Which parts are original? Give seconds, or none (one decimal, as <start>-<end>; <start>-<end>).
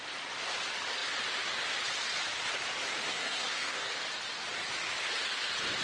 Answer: 0.0-3.1; 3.9-5.8